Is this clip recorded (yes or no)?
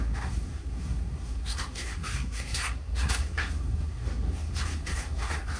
no